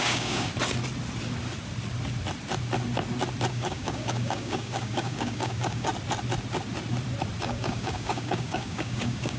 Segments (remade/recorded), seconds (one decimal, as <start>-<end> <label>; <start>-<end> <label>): 0.0-0.5 remade; 0.5-3.5 recorded; 3.5-5.9 remade; 5.9-7.4 recorded; 7.4-9.4 remade